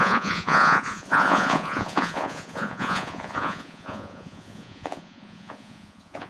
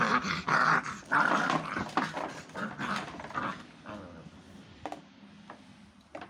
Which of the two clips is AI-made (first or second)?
first